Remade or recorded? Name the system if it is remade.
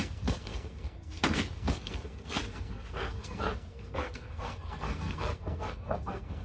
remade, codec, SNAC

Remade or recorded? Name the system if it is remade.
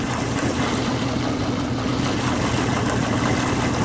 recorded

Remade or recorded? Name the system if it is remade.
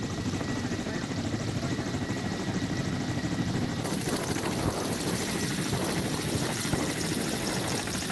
remade, vocoder, BigVGAN v2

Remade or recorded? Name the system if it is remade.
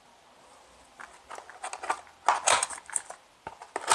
recorded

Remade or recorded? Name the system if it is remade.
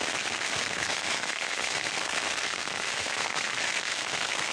remade, codec, SNAC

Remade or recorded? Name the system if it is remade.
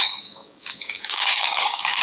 remade, codec, DAC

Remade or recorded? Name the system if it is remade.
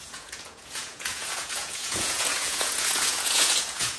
remade, vocoder, Vocos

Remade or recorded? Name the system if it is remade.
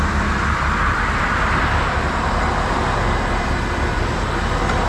remade, vocoder, BigVGAN v2